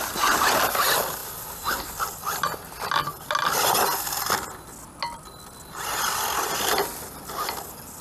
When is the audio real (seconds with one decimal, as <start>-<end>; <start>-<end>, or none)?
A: 0.0-8.0